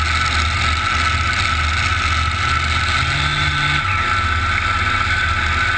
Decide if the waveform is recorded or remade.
recorded